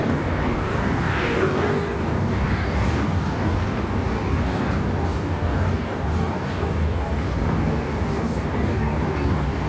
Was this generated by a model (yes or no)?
yes